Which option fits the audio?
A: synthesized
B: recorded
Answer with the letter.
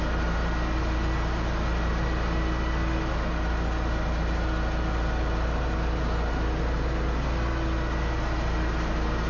B